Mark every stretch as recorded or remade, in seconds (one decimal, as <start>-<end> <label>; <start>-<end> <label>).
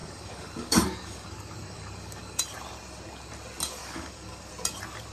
0.0-2.4 remade; 2.4-3.8 recorded; 3.8-4.5 remade; 4.5-5.1 recorded